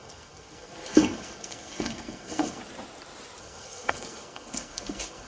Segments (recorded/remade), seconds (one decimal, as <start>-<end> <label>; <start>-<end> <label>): 0.0-2.6 remade; 2.6-3.4 recorded; 3.4-5.3 remade